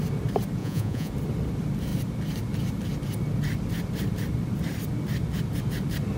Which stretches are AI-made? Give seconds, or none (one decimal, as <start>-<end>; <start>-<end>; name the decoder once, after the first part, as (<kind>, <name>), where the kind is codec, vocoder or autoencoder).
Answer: 0.6-1.1 (vocoder, Vocos)